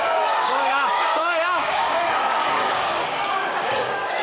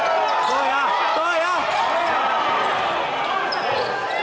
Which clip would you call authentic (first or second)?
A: second